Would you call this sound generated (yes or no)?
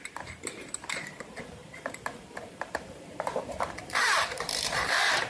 yes